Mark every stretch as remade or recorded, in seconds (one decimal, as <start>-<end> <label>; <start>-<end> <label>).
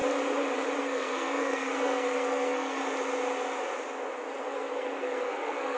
0.0-0.8 recorded; 0.8-2.8 remade; 2.8-4.4 recorded; 4.4-5.8 remade